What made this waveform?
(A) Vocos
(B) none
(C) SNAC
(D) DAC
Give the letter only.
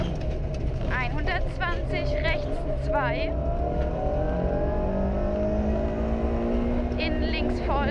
B